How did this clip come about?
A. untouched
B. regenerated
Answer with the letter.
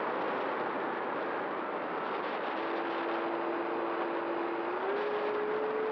A